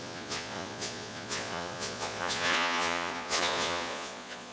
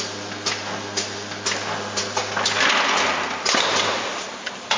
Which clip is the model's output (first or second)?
first